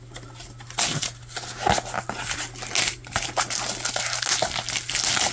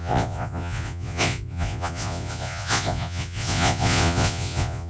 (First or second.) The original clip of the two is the first